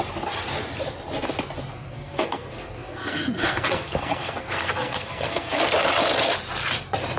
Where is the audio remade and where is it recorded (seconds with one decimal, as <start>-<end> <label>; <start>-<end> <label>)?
0.0-1.7 recorded; 1.7-5.6 remade; 5.6-7.2 recorded